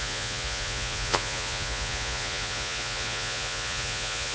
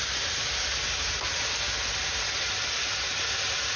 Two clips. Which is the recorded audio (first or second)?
second